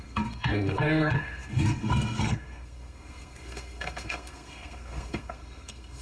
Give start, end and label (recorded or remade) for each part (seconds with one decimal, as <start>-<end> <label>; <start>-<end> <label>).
0.0-6.0 remade